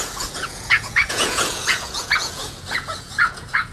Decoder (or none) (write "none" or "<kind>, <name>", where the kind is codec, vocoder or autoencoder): vocoder, Vocos